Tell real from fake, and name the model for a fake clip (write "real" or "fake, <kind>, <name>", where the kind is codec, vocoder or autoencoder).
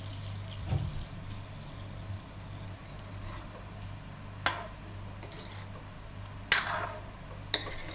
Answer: real